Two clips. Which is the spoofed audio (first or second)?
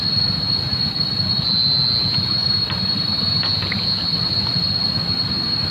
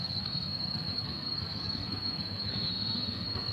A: second